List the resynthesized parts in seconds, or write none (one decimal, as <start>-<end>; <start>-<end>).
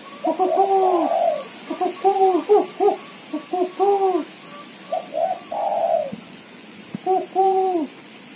1.1-2.5; 5.3-6.8; 7.2-8.4